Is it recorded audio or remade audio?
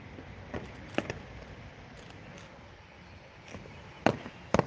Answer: recorded